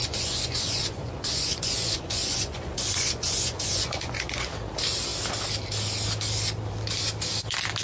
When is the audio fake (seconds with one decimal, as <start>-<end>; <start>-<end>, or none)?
0.0-4.5